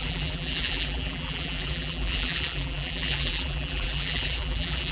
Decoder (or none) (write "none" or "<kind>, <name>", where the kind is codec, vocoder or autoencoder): vocoder, BigVGAN v2